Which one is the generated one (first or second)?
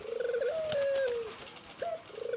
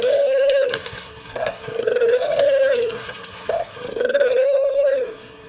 second